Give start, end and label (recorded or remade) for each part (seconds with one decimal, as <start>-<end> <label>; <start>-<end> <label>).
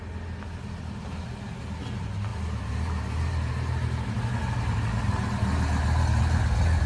0.0-6.9 recorded